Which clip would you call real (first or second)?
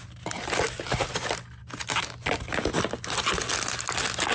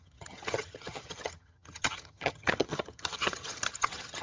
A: first